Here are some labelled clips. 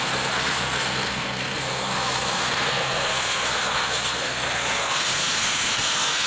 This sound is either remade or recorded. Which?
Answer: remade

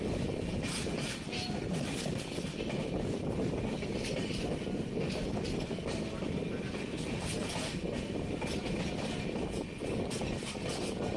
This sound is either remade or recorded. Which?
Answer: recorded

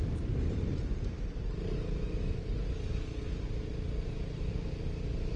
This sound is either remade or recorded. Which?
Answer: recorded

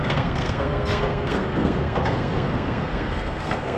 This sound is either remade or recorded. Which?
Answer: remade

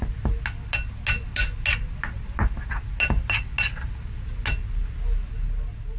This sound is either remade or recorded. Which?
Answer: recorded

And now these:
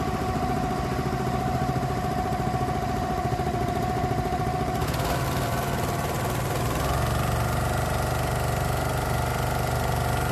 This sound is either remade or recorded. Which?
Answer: recorded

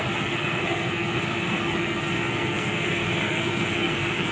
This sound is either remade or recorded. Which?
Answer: remade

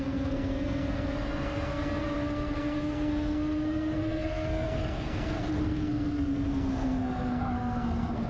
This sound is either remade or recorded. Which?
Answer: remade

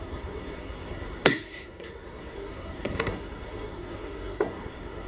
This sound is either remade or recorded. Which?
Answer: remade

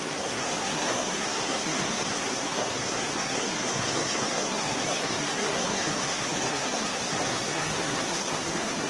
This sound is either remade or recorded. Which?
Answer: remade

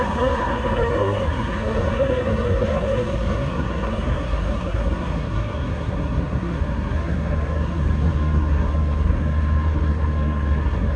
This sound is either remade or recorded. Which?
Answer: remade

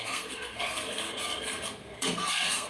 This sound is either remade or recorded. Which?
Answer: remade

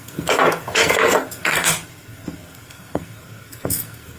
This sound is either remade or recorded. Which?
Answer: remade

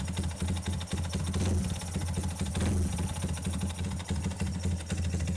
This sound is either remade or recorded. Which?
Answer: recorded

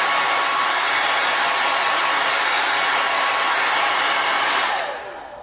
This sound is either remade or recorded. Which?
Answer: recorded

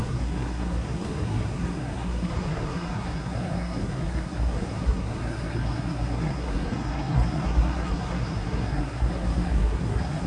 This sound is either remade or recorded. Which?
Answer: remade